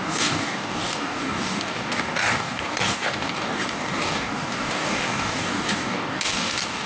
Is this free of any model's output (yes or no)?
no